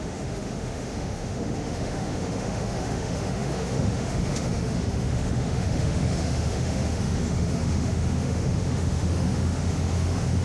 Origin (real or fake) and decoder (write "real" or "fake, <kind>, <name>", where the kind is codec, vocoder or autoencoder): fake, autoencoder, DAC-VAE